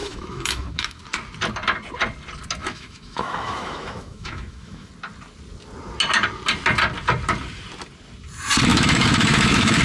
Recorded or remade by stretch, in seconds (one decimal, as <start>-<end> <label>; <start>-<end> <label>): 0.0-1.0 remade; 1.0-2.6 recorded; 2.6-4.9 remade; 4.9-8.7 recorded; 8.7-9.8 remade